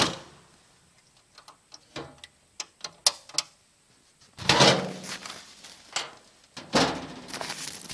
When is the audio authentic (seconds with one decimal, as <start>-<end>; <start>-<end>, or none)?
0.0-7.9